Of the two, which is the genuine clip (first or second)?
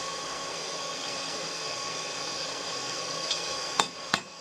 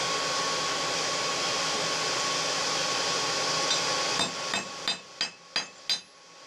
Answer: second